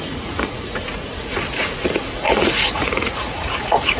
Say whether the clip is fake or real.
fake